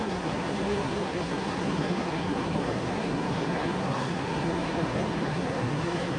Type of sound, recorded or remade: remade